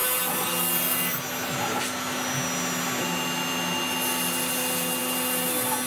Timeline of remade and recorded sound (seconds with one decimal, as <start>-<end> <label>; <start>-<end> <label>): 0.0-5.9 recorded